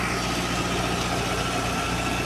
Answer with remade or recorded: recorded